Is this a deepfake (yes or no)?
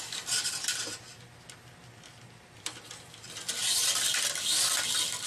no